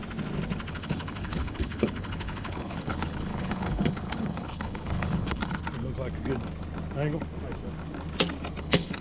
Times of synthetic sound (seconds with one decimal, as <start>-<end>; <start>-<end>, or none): 0.7-5.6; 8.6-9.0